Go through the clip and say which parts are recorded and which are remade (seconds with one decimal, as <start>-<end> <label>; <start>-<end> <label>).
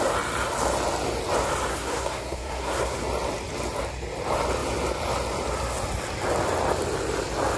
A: 0.0-1.7 recorded; 1.7-3.0 remade; 3.0-7.6 recorded